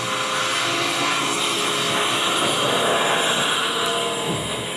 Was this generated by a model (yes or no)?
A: no